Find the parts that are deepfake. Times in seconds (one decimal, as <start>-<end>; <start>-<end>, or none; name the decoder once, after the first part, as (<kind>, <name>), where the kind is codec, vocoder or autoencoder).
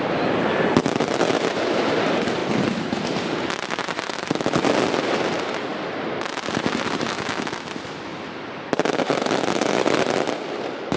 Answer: none